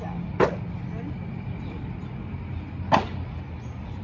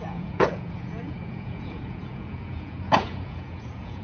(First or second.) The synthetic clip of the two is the second